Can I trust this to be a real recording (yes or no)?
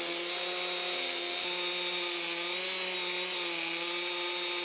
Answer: yes